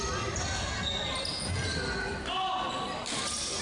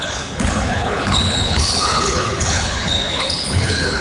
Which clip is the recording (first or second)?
first